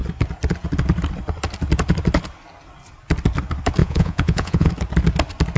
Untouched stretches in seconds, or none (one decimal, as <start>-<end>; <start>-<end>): 0.0-3.8; 4.7-5.6